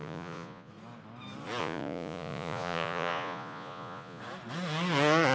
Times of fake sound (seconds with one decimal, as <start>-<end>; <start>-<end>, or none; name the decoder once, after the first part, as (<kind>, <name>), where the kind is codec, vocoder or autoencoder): 0.0-0.7 (vocoder, Vocos); 1.6-4.2